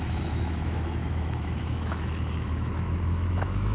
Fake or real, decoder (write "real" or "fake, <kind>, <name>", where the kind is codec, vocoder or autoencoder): fake, autoencoder, DAC-VAE